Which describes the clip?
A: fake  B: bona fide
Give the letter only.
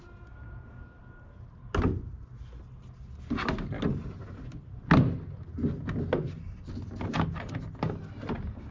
B